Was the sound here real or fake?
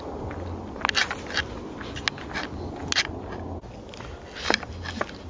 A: real